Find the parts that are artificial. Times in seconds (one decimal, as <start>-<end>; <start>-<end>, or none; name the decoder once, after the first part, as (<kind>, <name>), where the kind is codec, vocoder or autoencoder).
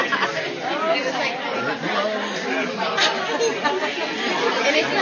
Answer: none